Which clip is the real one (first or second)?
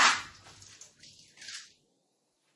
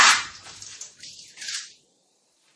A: first